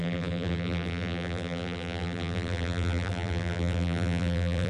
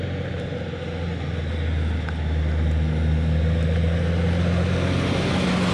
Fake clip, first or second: first